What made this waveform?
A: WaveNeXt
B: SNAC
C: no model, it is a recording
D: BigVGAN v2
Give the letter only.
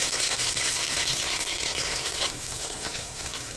B